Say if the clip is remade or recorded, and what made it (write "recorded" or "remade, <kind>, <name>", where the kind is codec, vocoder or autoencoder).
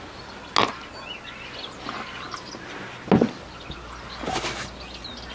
recorded